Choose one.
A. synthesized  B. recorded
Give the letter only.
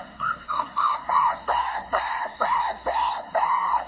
A